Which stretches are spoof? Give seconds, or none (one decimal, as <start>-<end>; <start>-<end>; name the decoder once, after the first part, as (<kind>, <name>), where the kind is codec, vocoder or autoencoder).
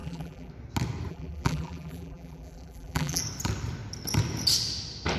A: 0.0-0.5 (vocoder, BigVGAN v2); 1.1-3.2